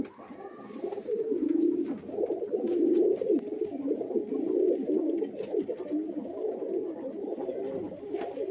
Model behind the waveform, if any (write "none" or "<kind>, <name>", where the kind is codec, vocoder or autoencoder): none